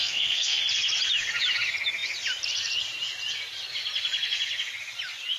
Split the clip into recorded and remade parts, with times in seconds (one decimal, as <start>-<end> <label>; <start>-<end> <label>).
0.0-0.6 remade; 0.6-5.4 recorded